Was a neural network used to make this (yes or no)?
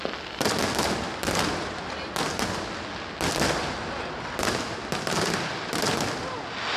no